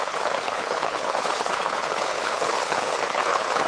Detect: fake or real fake